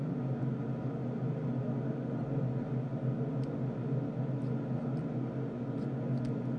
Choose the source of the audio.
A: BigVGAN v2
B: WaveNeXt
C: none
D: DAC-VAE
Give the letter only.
C